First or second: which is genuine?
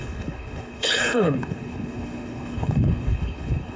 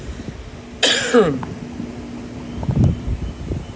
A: second